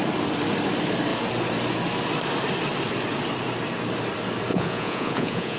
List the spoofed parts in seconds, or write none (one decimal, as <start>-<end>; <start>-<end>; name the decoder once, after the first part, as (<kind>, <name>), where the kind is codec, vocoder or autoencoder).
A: 4.5-5.6 (vocoder, Vocos)